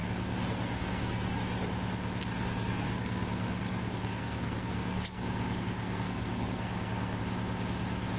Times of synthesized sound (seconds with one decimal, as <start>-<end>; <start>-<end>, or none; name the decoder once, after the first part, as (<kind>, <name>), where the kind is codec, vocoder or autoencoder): 0.0-1.4 (codec, SNAC); 2.3-7.2